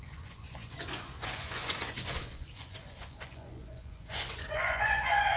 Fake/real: fake